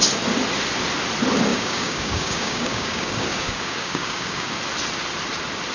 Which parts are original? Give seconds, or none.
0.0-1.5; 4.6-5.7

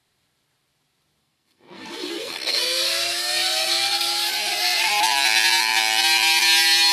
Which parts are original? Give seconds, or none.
0.0-1.2; 4.9-6.9

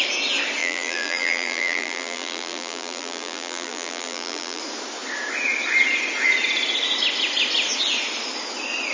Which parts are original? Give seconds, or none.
0.0-0.6; 4.6-8.9

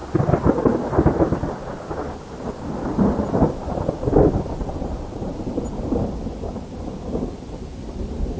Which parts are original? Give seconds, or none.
1.0-4.6; 5.3-8.4